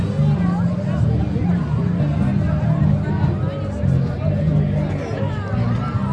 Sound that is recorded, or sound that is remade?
recorded